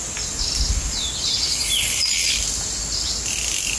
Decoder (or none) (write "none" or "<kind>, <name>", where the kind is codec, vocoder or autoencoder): none